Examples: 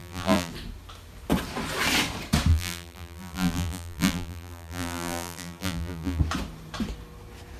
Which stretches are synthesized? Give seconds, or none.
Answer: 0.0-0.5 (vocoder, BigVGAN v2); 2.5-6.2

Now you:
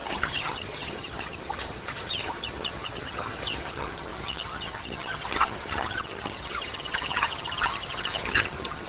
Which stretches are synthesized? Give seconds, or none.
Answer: 0.0-8.9 (vocoder, HiFi-GAN)

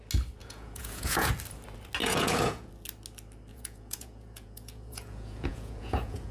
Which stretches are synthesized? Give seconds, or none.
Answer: 0.4-1.3 (vocoder, Vocos); 2.0-2.7; 3.5-6.3

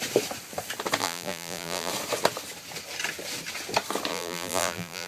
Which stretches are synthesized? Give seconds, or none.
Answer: 1.0-1.9 (vocoder, BigVGAN v2); 4.1-5.1

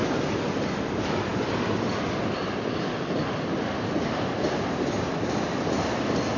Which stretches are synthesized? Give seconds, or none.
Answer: none

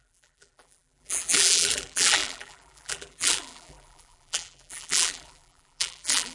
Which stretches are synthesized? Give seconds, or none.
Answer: 0.0-6.3 (vocoder, BigVGAN v2)